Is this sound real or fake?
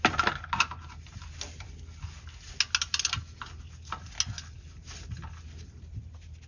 real